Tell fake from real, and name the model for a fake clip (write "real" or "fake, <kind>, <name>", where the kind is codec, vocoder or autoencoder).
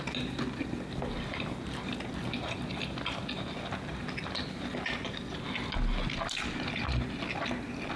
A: real